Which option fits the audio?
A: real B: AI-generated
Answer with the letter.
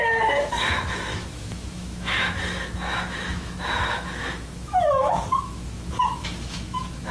B